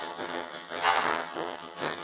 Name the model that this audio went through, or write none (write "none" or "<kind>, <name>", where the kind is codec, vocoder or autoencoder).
vocoder, HiFi-GAN